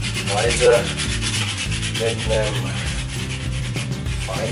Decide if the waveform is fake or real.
fake